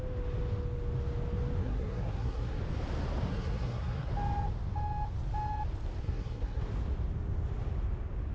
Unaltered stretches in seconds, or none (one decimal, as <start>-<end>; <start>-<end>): 0.0-1.6; 2.6-3.3; 4.1-6.0; 6.6-8.3